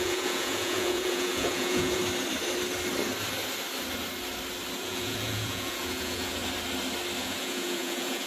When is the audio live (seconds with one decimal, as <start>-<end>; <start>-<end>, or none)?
2.0-4.8; 6.4-7.2